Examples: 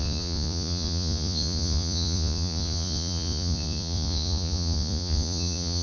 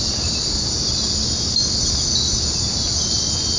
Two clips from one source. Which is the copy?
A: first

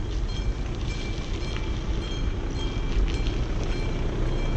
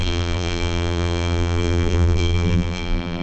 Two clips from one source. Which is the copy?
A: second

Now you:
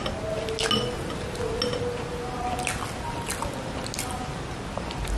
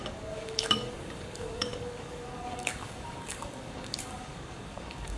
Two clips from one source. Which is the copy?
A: second